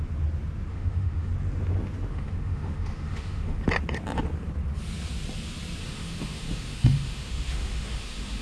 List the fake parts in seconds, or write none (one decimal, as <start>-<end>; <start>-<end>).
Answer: 0.7-1.3; 2.1-3.6; 5.8-8.4